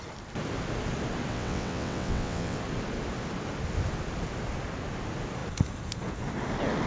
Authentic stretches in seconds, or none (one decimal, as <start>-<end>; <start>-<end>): 0.0-1.3; 2.6-6.9